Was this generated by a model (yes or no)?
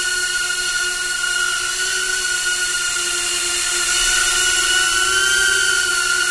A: no